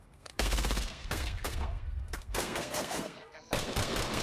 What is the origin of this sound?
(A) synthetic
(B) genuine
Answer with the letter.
A